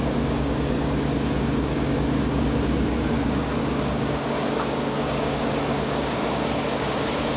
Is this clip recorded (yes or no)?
no